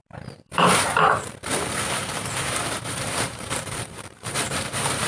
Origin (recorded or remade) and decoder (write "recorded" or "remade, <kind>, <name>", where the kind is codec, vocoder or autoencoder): remade, vocoder, BigVGAN v2